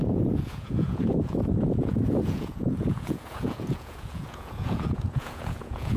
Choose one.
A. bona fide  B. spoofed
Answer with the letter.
B